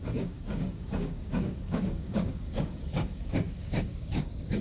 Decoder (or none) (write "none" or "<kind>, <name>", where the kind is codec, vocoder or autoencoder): codec, DAC